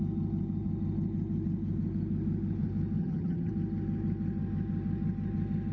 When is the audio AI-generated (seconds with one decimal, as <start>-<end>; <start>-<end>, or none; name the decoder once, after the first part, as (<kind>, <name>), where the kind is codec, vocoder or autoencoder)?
3.0-3.5 (vocoder, HiFi-GAN)